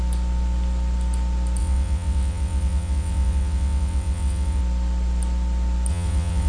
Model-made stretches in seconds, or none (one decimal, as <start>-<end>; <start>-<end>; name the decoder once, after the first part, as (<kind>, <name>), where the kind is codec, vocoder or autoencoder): 1.6-4.6 (vocoder, WaveNeXt); 5.9-6.5